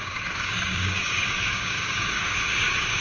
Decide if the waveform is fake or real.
fake